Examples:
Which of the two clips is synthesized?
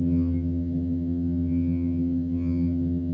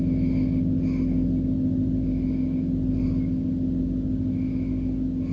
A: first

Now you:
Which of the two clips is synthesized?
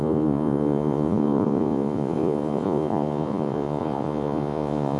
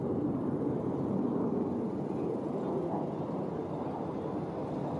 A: first